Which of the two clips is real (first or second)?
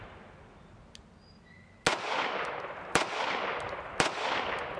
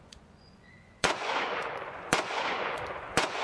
first